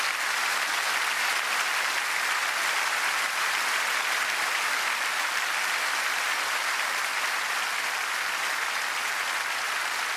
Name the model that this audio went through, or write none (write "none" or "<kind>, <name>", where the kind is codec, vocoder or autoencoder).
none